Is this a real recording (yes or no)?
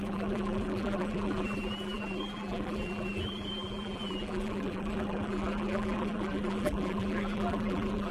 no